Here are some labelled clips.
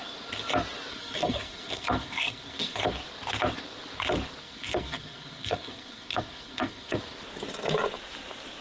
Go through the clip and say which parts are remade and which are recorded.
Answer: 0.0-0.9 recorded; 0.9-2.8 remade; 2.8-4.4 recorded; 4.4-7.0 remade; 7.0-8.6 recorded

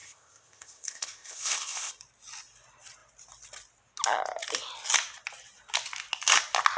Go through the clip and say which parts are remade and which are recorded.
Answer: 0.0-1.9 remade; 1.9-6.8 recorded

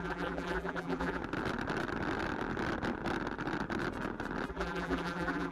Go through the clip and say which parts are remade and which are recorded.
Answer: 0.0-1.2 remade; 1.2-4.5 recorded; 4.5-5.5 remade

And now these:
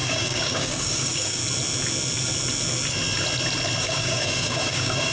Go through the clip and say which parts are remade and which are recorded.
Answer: 0.0-1.4 remade; 1.4-3.8 recorded; 3.8-5.1 remade

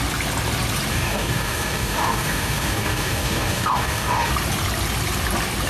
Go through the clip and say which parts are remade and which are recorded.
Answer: 0.0-0.9 recorded; 0.9-4.3 remade; 4.3-5.7 recorded

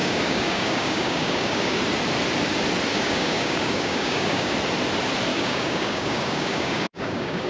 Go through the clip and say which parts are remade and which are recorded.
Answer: 0.0-1.8 remade; 1.8-2.9 recorded; 2.9-4.5 remade; 4.5-5.3 recorded; 5.3-7.5 remade

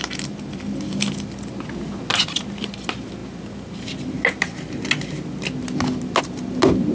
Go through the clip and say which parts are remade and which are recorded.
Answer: 0.0-6.9 recorded